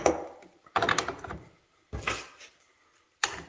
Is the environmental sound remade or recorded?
recorded